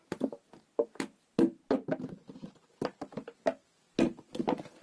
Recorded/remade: recorded